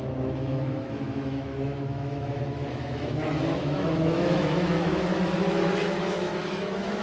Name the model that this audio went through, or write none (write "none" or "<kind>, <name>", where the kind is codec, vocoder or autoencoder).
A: autoencoder, DAC-VAE